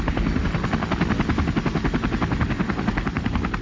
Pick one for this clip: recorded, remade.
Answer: recorded